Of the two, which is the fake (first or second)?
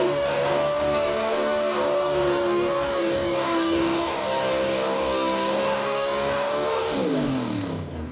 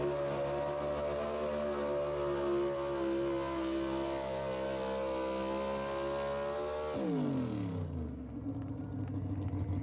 first